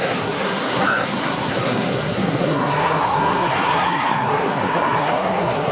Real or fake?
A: fake